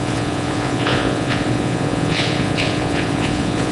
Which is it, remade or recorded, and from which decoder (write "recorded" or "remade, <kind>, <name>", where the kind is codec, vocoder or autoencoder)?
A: remade, vocoder, Vocos